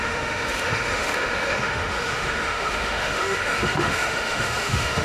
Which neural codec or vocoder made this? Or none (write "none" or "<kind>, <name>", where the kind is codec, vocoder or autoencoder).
autoencoder, DAC-VAE